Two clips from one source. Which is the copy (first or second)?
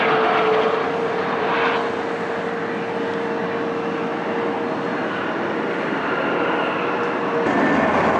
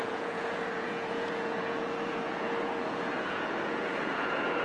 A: second